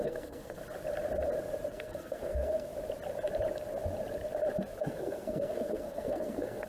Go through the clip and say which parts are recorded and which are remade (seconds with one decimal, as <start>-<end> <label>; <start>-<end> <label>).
0.0-0.6 remade; 0.6-1.7 recorded; 1.7-2.7 remade; 2.7-4.8 recorded; 4.8-6.7 remade